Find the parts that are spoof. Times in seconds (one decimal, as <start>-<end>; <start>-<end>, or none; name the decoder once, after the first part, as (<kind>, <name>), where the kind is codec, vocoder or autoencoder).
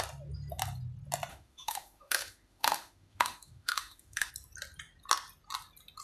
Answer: 1.3-4.3 (autoencoder, DAC-VAE)